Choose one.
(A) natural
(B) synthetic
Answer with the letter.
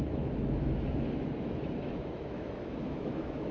B